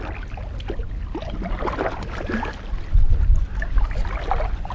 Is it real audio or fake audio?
real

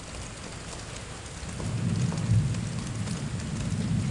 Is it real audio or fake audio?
real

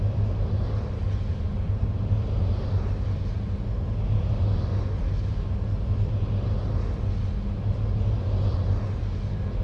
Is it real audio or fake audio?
real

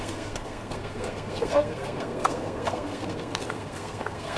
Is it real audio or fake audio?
fake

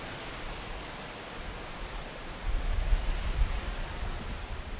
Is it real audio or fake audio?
real